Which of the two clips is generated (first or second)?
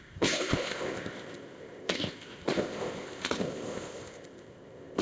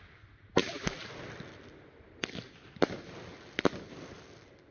first